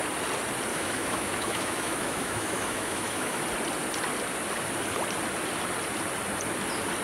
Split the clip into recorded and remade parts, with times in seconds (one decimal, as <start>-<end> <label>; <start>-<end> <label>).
0.0-0.7 recorded; 0.7-3.4 remade; 3.4-7.0 recorded